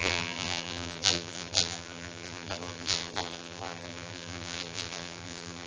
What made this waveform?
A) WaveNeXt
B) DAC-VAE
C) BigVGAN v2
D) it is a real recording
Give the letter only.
C